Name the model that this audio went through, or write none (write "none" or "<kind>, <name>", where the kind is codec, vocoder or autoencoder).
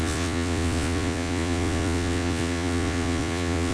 vocoder, Vocos